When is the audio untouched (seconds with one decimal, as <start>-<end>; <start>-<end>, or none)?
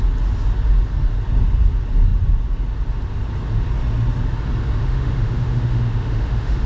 0.0-4.8